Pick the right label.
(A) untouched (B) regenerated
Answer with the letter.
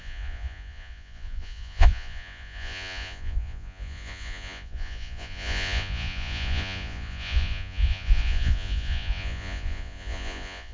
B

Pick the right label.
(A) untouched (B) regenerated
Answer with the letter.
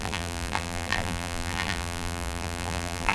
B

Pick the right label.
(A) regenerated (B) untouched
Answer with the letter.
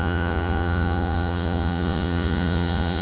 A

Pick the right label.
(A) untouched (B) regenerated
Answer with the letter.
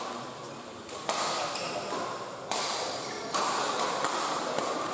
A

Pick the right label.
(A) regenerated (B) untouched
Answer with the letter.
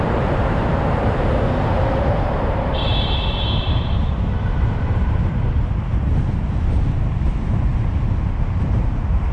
A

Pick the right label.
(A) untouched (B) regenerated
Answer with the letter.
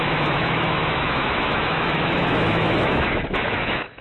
B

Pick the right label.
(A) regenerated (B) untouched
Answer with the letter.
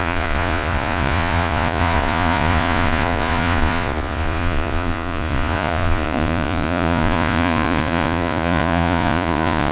A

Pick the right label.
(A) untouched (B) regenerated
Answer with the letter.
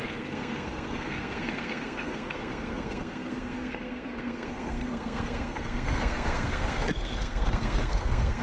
B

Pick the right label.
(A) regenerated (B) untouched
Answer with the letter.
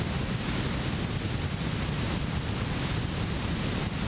B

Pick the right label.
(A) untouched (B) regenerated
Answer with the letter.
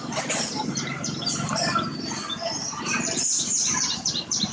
B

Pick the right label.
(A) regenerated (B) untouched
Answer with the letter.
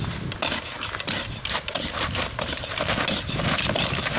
B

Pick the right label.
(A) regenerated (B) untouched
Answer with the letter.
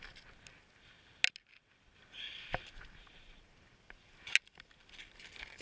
B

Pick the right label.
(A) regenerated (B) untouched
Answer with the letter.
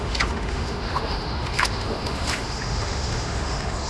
A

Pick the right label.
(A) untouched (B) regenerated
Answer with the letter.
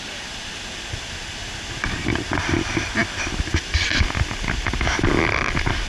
A